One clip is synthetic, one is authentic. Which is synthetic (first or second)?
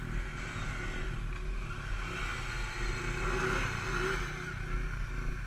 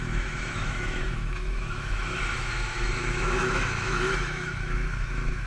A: second